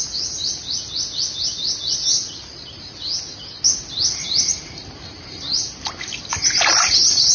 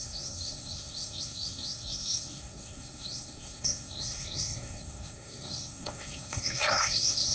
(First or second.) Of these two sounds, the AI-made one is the second